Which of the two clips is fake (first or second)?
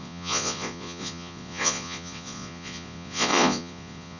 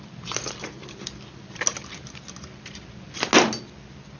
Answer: first